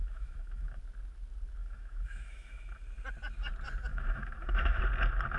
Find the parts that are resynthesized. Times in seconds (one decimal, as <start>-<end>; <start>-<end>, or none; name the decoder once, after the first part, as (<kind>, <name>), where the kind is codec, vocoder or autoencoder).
0.0-0.8 (autoencoder, DAC-VAE); 1.6-2.8; 3.9-4.8